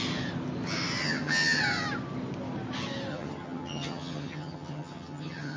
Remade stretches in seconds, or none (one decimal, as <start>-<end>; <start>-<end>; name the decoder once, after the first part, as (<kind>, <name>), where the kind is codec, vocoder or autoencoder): 1.0-1.6 (vocoder, HiFi-GAN); 3.1-5.6